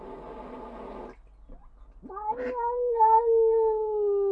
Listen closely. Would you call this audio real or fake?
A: real